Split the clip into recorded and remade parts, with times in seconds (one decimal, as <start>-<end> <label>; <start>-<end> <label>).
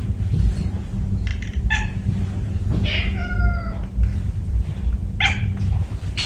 0.0-1.3 recorded; 1.3-2.6 remade; 2.6-6.3 recorded